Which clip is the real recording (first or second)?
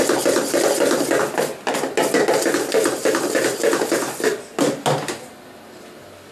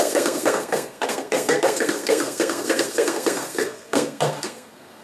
first